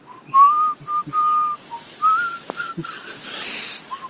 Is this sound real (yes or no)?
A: yes